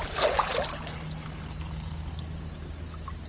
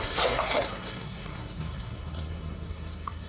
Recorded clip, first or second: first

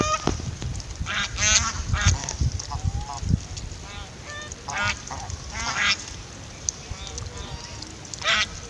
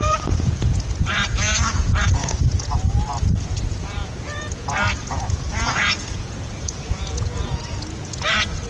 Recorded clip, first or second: first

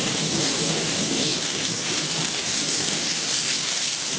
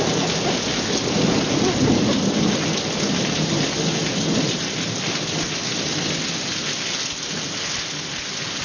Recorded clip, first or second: second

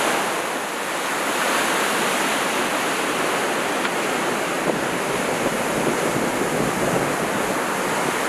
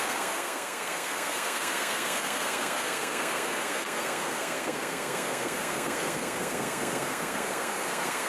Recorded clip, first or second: first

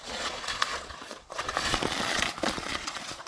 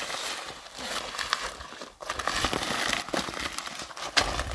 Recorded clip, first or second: second